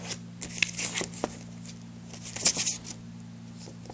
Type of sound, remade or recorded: recorded